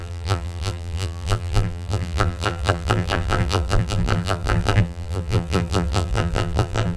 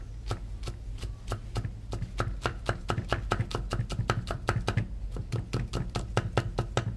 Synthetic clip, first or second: first